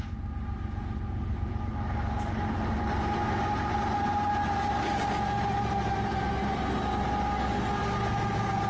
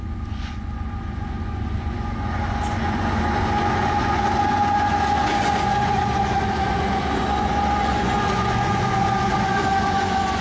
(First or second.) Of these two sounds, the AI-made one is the second